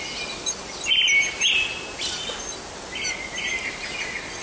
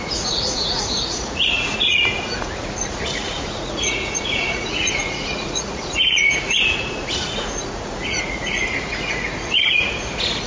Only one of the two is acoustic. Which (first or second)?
first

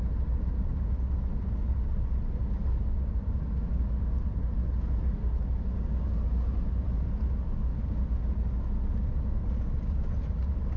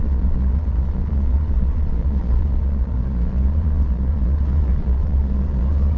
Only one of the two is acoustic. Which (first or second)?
first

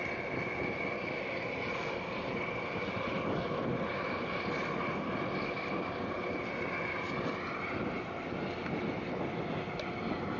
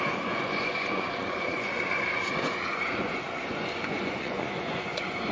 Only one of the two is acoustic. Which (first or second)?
first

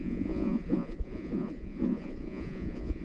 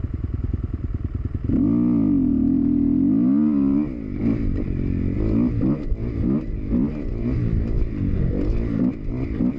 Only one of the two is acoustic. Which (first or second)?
second